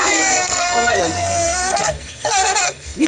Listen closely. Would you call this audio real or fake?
fake